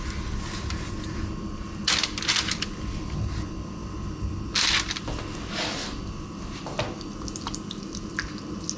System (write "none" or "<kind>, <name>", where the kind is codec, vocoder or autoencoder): none